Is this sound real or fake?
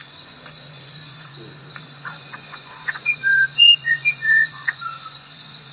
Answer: fake